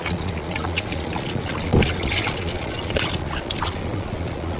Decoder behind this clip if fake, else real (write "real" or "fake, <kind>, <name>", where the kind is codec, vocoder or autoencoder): fake, vocoder, Vocos